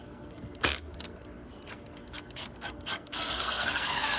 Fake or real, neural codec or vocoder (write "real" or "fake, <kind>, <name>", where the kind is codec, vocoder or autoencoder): fake, codec, SNAC